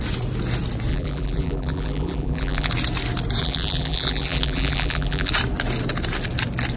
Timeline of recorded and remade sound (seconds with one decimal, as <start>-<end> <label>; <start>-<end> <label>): 0.0-0.9 recorded; 0.9-2.7 remade; 2.7-3.4 recorded; 3.4-5.3 remade; 5.3-6.8 recorded